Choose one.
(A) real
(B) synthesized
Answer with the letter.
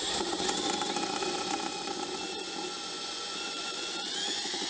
B